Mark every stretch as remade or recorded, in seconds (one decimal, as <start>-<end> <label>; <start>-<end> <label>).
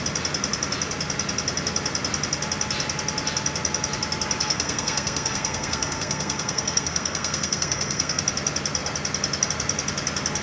0.0-4.4 recorded; 4.4-8.2 remade; 8.2-10.4 recorded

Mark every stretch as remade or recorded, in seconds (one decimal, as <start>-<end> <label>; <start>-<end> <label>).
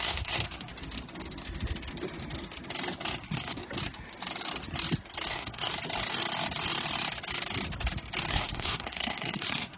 0.0-0.7 remade; 0.7-3.2 recorded; 3.2-3.6 remade; 3.6-5.3 recorded; 5.3-5.7 remade; 5.7-8.3 recorded; 8.3-9.8 remade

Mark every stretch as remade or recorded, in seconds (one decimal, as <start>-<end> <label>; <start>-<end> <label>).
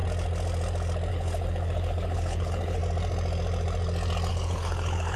0.0-1.1 recorded; 1.1-2.8 remade; 2.8-4.3 recorded; 4.3-5.2 remade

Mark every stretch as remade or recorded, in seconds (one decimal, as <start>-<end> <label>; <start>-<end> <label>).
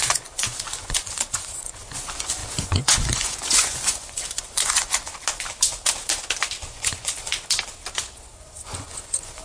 0.0-5.1 remade; 5.1-6.7 recorded; 6.7-7.3 remade; 7.3-8.0 recorded; 8.0-9.4 remade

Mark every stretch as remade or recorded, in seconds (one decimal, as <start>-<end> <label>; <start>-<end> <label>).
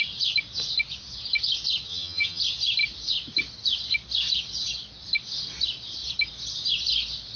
0.0-1.9 recorded; 1.9-2.4 remade; 2.4-7.4 recorded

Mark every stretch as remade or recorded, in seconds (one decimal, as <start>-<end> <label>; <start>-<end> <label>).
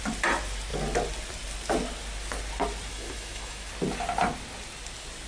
0.0-2.9 recorded; 2.9-3.7 remade; 3.7-5.3 recorded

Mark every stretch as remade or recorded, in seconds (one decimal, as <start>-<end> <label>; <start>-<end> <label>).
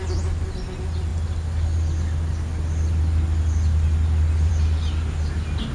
0.0-5.7 recorded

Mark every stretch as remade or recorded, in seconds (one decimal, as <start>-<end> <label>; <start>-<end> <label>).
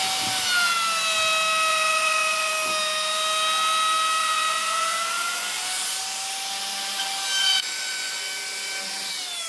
0.0-1.7 recorded; 1.7-2.5 remade; 2.5-4.2 recorded; 4.2-5.6 remade; 5.6-7.4 recorded; 7.4-8.2 remade; 8.2-9.5 recorded